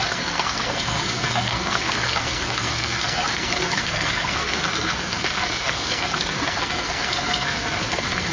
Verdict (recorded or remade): remade